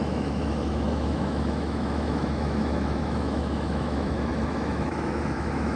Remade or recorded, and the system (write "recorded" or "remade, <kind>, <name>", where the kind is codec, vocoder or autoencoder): remade, autoencoder, DAC-VAE